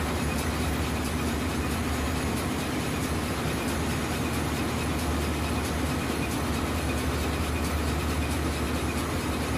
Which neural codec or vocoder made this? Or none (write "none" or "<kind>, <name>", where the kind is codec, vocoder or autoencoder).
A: none